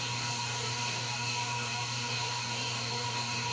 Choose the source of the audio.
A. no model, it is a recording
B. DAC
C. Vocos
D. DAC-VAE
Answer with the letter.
B